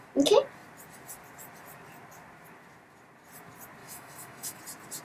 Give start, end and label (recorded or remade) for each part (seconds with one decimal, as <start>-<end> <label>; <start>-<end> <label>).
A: 0.0-3.8 recorded; 3.8-4.6 remade; 4.6-5.0 recorded